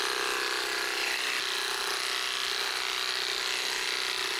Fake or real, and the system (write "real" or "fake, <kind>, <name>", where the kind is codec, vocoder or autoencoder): real